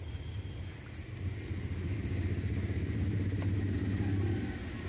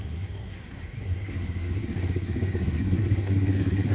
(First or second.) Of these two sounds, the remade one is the second